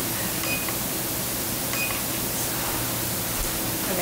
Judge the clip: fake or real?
real